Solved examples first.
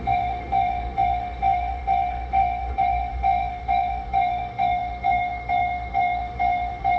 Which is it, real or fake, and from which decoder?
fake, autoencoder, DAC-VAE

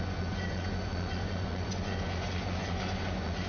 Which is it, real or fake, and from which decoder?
fake, vocoder, Vocos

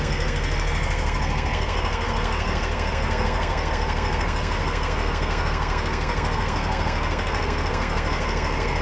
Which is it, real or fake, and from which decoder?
fake, codec, SNAC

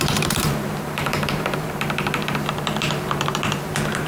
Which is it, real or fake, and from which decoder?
fake, vocoder, BigVGAN v2